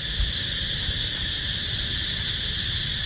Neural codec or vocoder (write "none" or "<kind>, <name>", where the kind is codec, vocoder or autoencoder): none